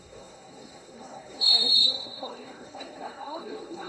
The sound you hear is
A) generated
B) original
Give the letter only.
A